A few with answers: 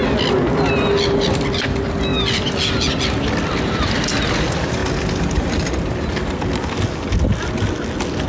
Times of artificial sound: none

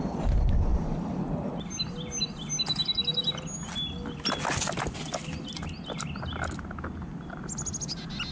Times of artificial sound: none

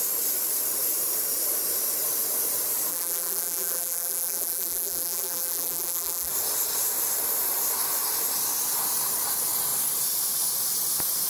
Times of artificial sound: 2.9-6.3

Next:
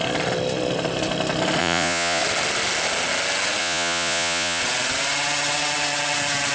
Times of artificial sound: 1.6-2.2; 3.6-4.6